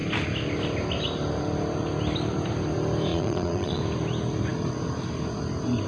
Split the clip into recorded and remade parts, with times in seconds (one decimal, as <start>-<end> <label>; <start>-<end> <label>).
0.0-3.1 recorded; 3.1-3.8 remade; 3.8-5.9 recorded